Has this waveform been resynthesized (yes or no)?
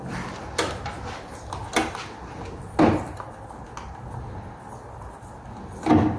no